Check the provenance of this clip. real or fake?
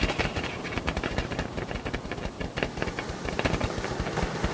real